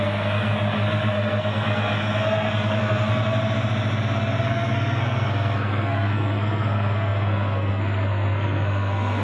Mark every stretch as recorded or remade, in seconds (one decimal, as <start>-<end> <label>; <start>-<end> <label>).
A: 0.0-3.1 remade; 3.1-4.4 recorded; 4.4-9.2 remade